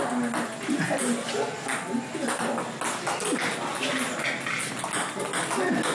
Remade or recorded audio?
recorded